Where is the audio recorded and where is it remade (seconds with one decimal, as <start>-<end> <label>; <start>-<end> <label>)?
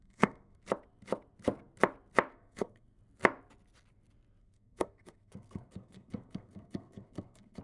0.0-0.6 remade; 0.6-2.3 recorded; 2.3-3.0 remade; 3.0-4.4 recorded; 4.4-7.6 remade